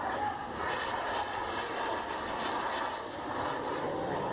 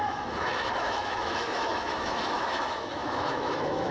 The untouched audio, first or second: first